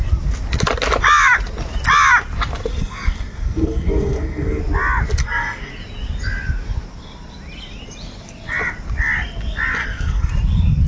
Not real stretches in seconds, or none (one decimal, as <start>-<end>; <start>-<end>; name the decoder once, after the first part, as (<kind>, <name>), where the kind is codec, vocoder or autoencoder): 2.7-4.6 (codec, SNAC); 5.2-5.7; 9.8-10.3